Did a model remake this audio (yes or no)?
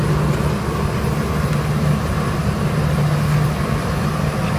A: no